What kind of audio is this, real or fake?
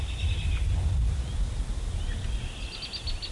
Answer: real